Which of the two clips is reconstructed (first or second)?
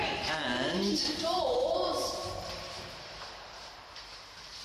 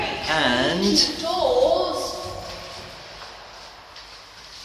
first